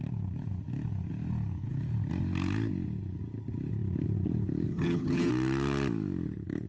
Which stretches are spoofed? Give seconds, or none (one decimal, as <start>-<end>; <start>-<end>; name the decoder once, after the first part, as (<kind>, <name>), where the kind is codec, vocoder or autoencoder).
4.7-5.3 (vocoder, HiFi-GAN)